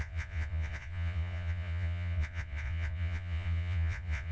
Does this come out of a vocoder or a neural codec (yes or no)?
yes